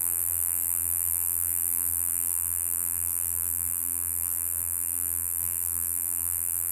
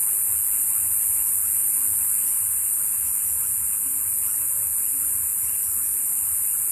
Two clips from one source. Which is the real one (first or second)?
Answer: second